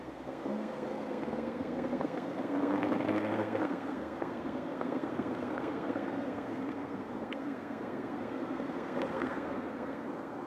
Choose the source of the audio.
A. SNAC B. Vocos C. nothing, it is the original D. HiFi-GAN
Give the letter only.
A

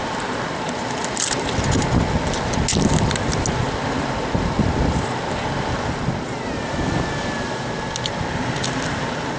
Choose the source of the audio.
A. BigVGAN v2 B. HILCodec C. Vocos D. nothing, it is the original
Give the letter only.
D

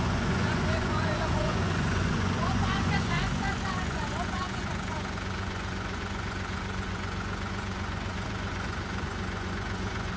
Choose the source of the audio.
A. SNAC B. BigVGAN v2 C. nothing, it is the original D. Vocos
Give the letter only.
D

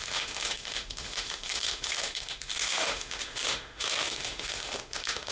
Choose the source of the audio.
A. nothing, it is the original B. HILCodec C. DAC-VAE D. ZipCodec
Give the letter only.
C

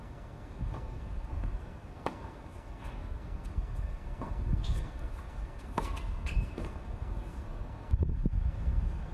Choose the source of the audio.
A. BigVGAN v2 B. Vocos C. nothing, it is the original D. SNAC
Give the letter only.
D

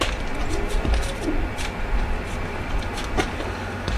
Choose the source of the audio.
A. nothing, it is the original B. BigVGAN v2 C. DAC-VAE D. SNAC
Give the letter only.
A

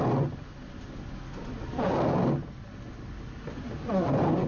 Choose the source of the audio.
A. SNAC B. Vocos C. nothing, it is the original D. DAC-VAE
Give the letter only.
C